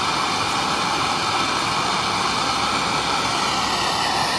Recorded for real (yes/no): yes